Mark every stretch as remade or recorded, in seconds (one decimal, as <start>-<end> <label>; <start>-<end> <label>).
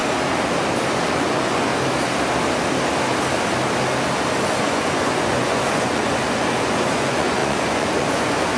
0.0-0.9 recorded; 0.9-1.7 remade; 1.7-4.6 recorded; 4.6-8.6 remade